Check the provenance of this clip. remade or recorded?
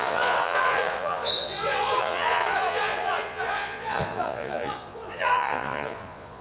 remade